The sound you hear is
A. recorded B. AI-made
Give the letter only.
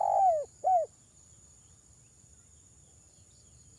A